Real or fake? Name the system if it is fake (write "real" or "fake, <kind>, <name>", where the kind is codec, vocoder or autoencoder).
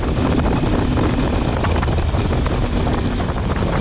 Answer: real